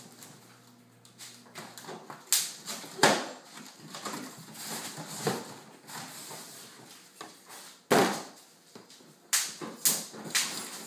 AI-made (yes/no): no